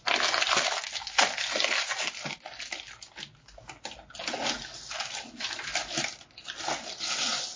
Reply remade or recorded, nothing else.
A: recorded